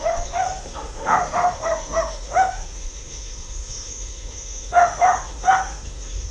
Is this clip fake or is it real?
fake